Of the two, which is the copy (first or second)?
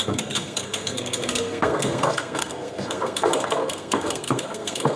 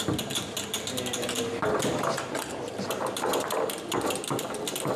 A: first